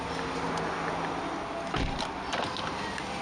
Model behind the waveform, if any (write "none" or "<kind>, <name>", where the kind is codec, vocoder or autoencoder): none